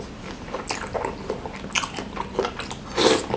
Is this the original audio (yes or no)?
yes